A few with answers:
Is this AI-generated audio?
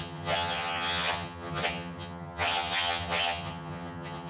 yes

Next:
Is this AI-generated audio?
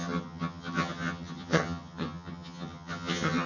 yes